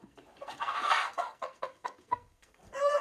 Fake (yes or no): yes